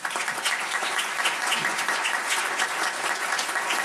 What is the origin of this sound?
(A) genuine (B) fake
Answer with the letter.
B